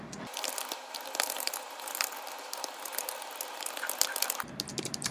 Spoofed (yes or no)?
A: no